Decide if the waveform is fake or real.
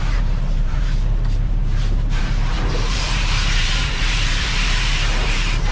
fake